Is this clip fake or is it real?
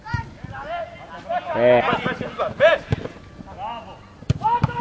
real